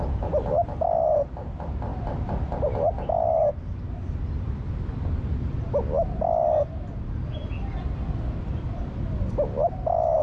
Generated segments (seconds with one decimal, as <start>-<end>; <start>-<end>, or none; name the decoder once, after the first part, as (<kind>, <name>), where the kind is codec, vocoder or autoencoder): none